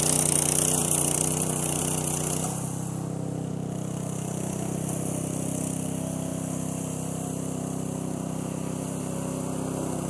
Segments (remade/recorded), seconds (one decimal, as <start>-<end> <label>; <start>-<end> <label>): 0.0-0.8 recorded; 0.8-1.8 remade; 1.8-6.3 recorded; 6.3-9.0 remade; 9.0-10.1 recorded